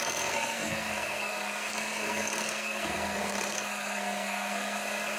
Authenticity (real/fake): fake